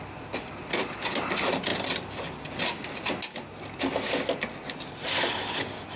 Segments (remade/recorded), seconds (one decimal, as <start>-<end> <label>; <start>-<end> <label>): 0.0-6.0 recorded